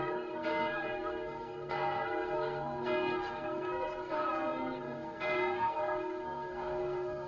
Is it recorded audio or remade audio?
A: remade